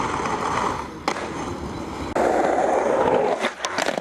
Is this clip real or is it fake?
real